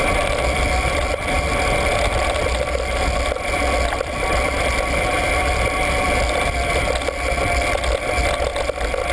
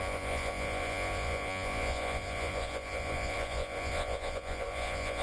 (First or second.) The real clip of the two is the first